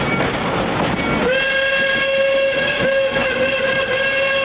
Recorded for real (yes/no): yes